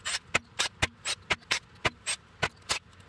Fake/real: real